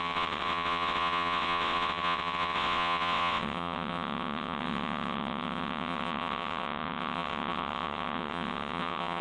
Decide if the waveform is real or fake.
fake